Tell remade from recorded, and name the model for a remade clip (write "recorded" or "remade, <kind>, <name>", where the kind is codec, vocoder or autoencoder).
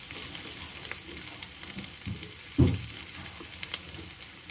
recorded